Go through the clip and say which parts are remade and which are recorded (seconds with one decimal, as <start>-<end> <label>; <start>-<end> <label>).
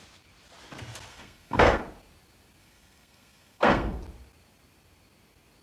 0.0-1.1 recorded; 1.1-1.8 remade; 1.8-2.6 recorded; 2.6-4.0 remade; 4.0-5.6 recorded